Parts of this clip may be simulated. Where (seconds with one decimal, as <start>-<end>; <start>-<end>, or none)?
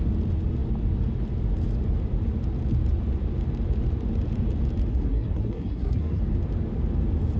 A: 4.9-6.2